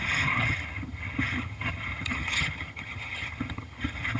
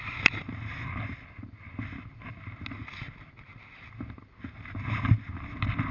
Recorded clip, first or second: second